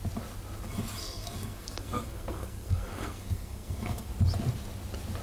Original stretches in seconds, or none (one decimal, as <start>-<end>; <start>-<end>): 0.0-1.0; 4.1-5.2